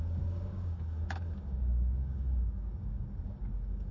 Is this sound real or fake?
fake